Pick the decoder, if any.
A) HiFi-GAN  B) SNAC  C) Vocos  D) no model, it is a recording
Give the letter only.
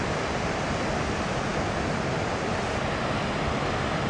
D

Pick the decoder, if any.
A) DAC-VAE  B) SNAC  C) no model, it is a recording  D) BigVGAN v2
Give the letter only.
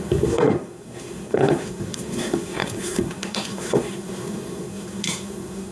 B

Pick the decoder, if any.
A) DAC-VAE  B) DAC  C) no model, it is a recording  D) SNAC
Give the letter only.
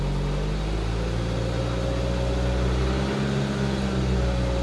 C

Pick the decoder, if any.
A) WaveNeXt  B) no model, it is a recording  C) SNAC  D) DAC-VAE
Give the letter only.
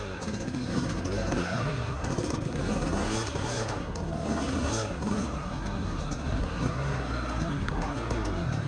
C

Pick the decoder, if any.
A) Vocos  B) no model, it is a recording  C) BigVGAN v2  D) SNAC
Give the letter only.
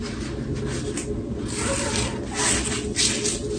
B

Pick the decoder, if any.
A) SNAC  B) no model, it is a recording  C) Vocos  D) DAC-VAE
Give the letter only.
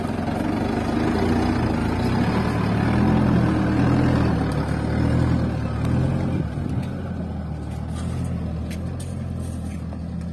B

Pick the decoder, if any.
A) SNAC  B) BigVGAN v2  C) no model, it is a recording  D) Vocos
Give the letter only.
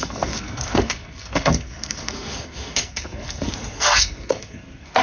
A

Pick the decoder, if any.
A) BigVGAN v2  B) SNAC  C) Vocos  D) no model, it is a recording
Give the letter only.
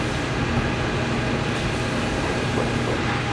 D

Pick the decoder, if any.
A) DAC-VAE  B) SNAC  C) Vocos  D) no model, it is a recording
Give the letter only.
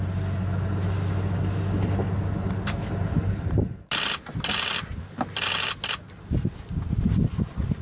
D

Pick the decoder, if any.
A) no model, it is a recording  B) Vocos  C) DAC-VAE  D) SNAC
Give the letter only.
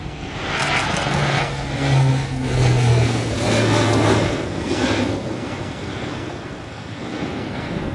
D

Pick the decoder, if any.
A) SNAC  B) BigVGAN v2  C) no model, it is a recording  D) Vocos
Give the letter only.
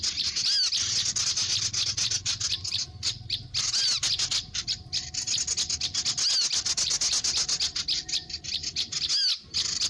C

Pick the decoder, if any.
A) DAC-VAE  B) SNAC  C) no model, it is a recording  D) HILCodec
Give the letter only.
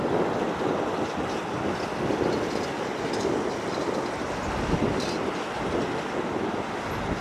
C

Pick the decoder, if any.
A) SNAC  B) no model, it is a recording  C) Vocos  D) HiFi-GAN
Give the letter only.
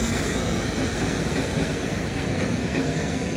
A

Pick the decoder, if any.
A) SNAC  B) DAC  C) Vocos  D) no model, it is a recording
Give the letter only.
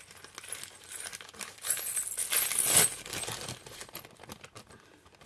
D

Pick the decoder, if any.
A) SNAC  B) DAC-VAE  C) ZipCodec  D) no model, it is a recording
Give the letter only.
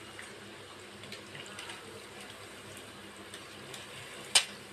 D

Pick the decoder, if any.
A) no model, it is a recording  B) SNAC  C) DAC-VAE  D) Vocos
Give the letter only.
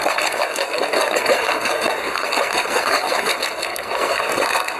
B